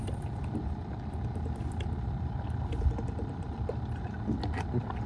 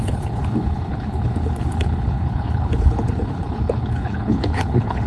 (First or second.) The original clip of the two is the first